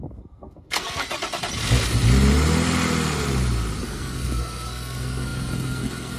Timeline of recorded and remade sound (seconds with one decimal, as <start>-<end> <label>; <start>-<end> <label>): 0.0-1.1 remade; 1.1-3.8 recorded; 3.8-6.2 remade